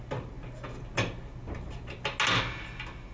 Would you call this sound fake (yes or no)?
no